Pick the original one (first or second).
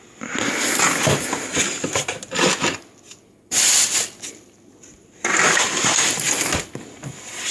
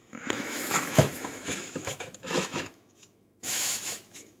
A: first